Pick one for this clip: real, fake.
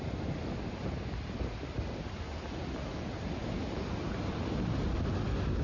real